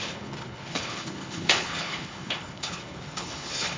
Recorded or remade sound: remade